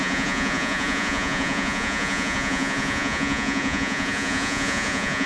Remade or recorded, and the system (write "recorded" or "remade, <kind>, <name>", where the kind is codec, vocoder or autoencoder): remade, vocoder, Vocos